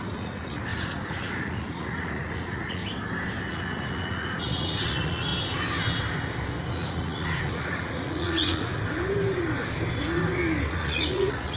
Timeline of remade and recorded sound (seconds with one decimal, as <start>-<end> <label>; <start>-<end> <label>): 0.0-2.8 remade; 2.8-3.5 recorded; 3.5-5.3 remade; 5.3-6.7 recorded; 6.7-8.8 remade; 8.8-10.7 recorded; 10.7-11.6 remade